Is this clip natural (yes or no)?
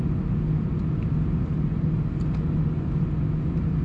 yes